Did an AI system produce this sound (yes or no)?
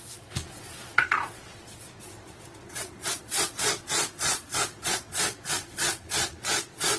yes